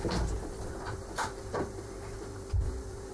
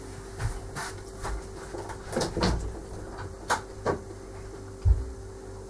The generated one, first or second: first